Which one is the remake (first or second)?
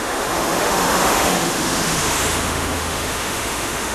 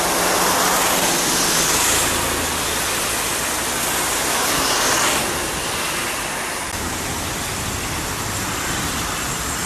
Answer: first